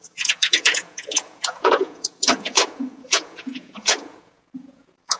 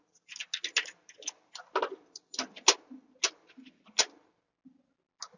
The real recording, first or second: second